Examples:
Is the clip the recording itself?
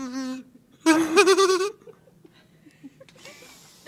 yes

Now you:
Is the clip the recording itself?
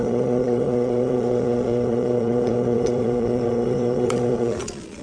no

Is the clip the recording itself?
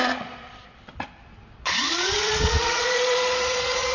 no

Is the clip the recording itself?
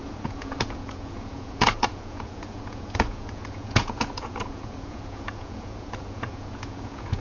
no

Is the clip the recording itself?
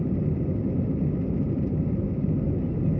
yes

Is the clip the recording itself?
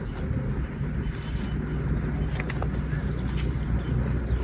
yes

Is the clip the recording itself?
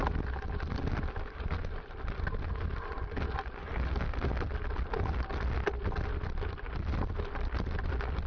yes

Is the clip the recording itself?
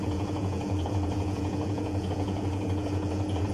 no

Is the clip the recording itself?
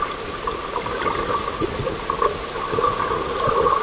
yes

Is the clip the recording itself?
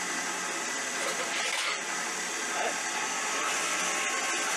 yes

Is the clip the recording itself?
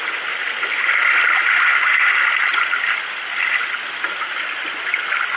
yes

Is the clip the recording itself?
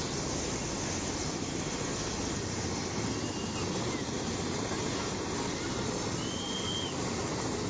yes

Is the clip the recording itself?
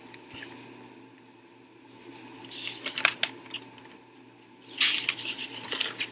yes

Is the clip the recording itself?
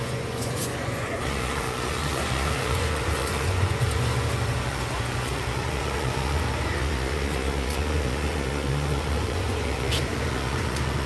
no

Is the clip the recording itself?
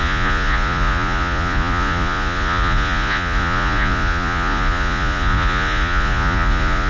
no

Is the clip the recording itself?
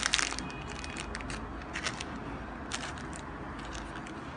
yes